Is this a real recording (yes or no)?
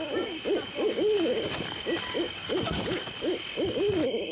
yes